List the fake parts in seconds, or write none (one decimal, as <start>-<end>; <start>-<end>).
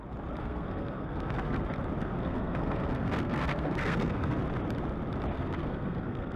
0.4-1.6; 2.0-4.4; 5.3-6.4